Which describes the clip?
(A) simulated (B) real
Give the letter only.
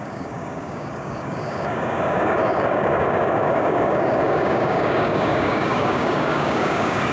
A